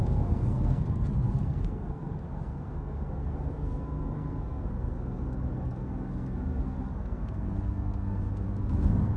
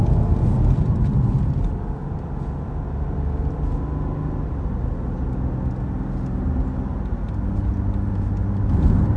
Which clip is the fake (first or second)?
first